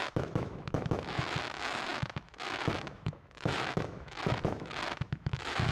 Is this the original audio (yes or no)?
no